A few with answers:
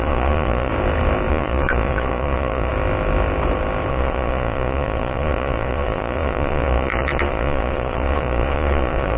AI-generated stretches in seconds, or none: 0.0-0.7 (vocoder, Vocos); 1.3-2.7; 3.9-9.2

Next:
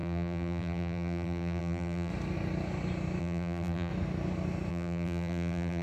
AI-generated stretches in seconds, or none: 0.0-2.1 (vocoder, BigVGAN v2); 3.2-3.9; 4.7-5.8

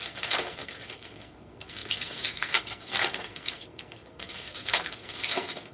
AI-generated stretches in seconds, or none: 0.0-5.7 (codec, SNAC)

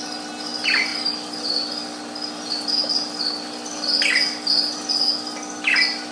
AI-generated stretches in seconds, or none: none

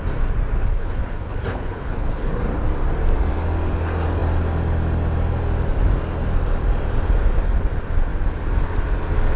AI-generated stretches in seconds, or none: 0.6-2.4 (codec, HILCodec)

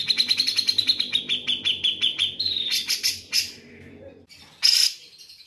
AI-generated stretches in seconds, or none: none